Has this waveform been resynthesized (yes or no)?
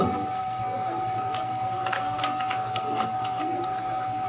yes